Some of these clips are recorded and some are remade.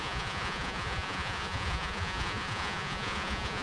remade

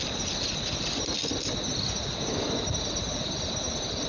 recorded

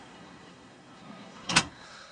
remade